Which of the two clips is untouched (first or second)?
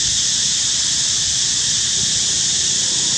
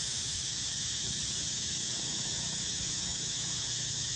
first